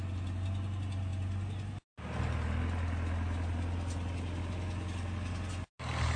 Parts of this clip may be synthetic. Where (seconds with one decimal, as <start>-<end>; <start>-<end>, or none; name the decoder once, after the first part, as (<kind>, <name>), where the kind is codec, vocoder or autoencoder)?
none